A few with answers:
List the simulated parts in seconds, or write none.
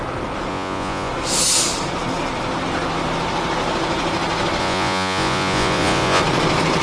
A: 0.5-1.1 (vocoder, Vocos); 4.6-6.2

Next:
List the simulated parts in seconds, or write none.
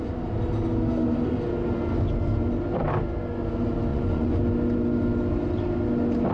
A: 3.9-4.4 (vocoder, Vocos)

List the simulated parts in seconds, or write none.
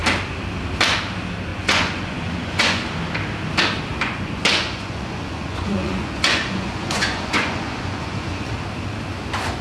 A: 1.5-2.9 (vocoder, Vocos); 3.9-8.5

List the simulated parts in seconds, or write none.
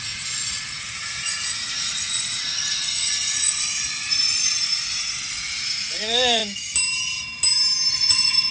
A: 0.0-6.4 (vocoder, Vocos); 7.9-8.5